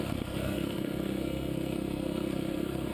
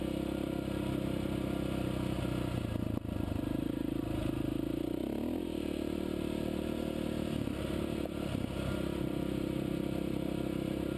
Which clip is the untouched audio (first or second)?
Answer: second